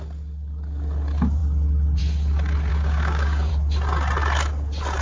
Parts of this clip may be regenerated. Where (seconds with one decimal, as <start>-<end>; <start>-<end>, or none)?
2.7-3.5